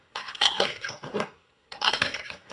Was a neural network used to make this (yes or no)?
yes